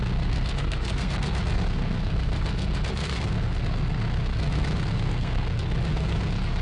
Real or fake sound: fake